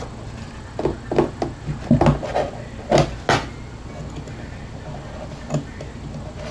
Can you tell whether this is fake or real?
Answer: real